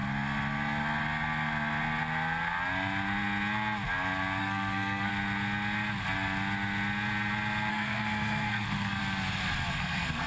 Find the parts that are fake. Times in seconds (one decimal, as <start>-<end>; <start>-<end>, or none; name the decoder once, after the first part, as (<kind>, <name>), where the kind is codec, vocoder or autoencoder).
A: 4.4-5.1 (codec, SNAC); 7.7-9.0; 9.7-10.3